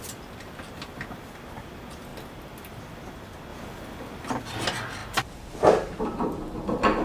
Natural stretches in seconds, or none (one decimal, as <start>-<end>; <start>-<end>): 0.0-7.0